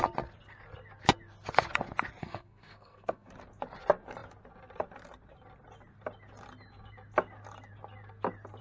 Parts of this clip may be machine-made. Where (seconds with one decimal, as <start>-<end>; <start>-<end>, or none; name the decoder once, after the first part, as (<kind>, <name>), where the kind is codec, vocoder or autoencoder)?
2.2-3.3 (codec, SNAC)